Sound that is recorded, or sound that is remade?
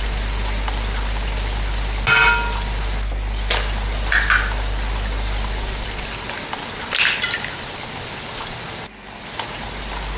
recorded